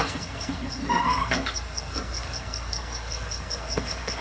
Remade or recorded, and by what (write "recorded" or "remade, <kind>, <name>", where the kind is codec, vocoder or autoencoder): remade, codec, SNAC